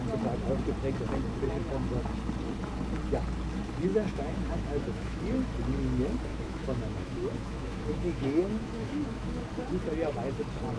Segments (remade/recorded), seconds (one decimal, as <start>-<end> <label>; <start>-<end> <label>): 0.0-3.9 recorded; 3.9-5.2 remade; 5.2-6.3 recorded; 6.3-9.4 remade; 9.4-10.8 recorded